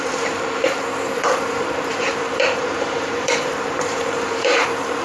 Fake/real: fake